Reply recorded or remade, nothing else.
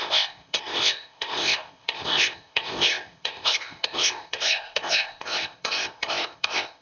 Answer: remade